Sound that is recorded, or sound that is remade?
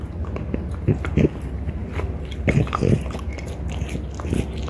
recorded